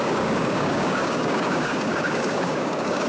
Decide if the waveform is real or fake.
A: fake